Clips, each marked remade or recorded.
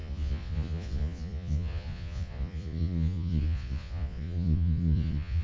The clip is remade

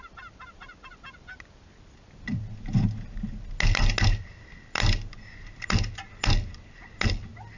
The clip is recorded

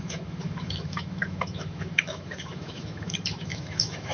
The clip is remade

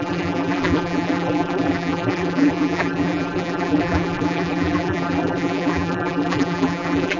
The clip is remade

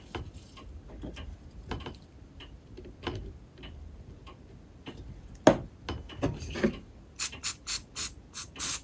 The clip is recorded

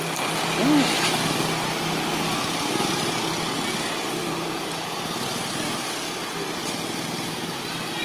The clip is recorded